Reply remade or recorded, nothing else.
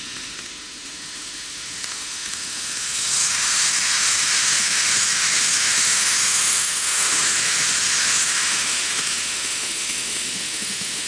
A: remade